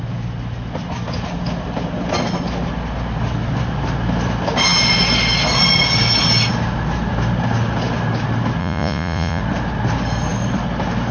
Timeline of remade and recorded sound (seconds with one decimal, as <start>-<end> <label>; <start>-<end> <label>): 0.0-8.6 recorded; 8.6-9.4 remade; 9.4-11.1 recorded